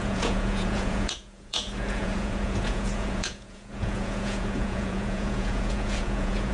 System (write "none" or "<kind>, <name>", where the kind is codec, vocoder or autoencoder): vocoder, Vocos